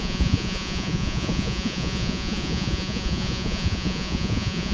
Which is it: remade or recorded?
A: remade